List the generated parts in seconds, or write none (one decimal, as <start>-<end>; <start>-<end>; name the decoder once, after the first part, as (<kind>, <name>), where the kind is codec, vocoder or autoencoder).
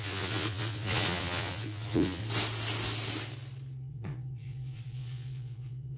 0.0-2.2 (vocoder, Vocos); 3.9-6.0